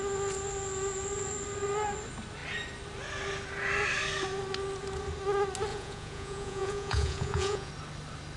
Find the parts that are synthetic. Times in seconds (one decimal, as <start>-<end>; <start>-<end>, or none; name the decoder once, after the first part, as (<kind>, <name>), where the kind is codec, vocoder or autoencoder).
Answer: 5.7-7.7 (vocoder, Vocos)